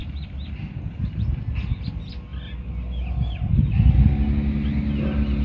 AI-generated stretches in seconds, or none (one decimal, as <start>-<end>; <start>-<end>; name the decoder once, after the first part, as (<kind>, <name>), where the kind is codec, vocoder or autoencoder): 0.0-1.5 (vocoder, BigVGAN v2)